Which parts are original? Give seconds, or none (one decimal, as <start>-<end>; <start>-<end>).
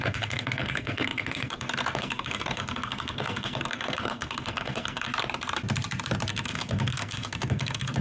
5.1-6.3